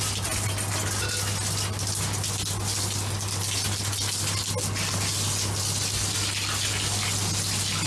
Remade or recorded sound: recorded